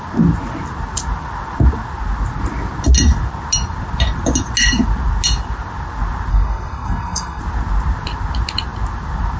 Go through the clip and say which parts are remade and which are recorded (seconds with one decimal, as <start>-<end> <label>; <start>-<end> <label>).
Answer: 0.0-6.3 recorded; 6.3-7.4 remade; 7.4-9.4 recorded